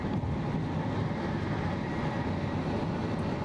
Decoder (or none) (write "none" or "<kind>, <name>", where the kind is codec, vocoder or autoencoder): none